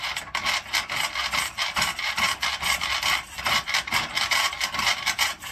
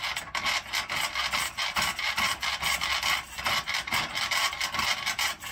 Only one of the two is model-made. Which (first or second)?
first